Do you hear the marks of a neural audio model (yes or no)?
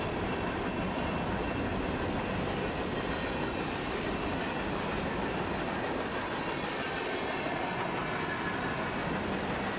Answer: no